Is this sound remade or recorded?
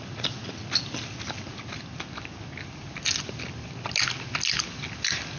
recorded